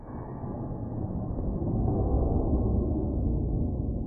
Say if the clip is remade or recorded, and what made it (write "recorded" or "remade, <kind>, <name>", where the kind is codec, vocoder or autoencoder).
remade, codec, SNAC